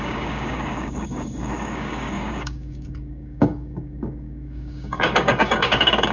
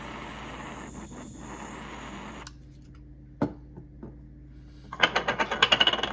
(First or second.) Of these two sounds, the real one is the second